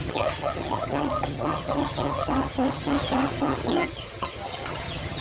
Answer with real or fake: fake